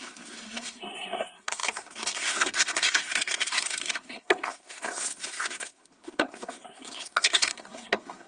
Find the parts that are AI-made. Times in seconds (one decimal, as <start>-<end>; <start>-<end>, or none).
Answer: 0.0-8.3